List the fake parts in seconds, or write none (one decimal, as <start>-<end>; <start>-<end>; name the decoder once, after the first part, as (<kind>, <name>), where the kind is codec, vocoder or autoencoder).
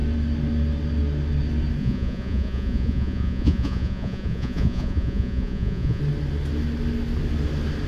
1.8-6.0 (vocoder, Vocos)